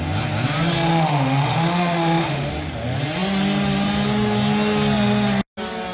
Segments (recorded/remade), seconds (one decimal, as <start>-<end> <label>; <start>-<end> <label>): 0.0-0.7 recorded; 0.7-2.5 remade; 2.5-5.9 recorded